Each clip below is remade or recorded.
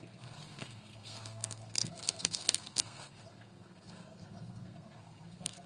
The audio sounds remade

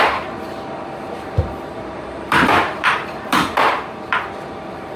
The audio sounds remade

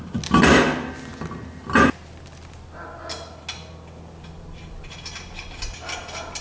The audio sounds recorded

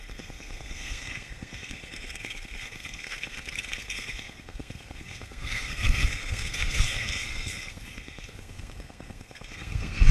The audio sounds remade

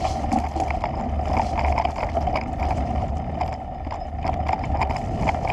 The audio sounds recorded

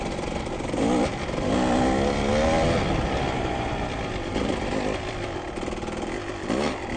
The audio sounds recorded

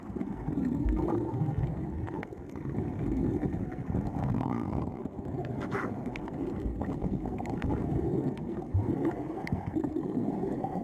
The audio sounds remade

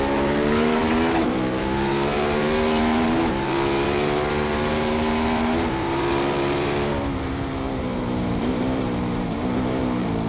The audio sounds remade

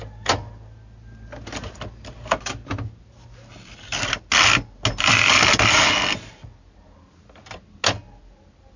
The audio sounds recorded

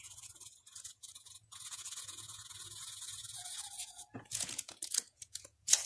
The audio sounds remade